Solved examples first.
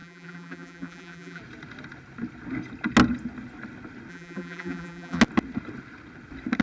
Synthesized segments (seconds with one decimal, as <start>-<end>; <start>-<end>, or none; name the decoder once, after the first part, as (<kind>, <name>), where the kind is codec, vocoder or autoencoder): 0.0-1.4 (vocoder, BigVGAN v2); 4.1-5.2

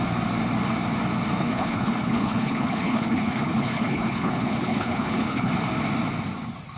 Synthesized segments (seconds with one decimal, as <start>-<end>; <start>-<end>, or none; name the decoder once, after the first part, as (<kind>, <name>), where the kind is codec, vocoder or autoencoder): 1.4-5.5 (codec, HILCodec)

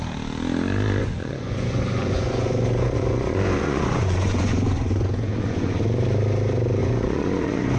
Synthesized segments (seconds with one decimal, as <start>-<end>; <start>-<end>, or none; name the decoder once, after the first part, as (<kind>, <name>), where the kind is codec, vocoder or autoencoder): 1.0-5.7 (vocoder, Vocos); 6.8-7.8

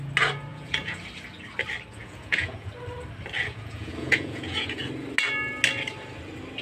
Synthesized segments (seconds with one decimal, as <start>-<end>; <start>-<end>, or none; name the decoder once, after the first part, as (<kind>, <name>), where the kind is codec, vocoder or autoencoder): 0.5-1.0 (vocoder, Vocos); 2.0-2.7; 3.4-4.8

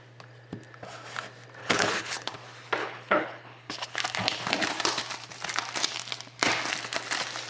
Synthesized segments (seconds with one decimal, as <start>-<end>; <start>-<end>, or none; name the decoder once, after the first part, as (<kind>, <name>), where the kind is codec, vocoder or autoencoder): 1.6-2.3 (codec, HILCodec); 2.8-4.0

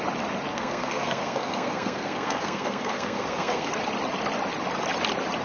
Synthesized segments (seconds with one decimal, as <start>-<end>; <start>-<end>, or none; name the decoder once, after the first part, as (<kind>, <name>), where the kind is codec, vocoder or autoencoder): 0.5-3.7 (codec, SNAC)

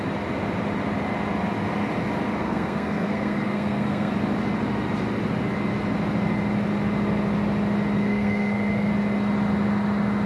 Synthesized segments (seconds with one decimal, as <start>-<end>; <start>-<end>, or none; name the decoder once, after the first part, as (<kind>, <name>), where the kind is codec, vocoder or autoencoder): 2.4-4.1 (codec, SNAC); 8.0-8.9